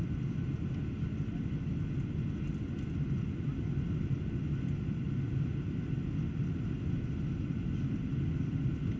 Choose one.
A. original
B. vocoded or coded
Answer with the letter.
A